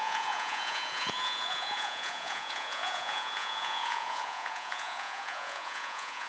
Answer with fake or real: fake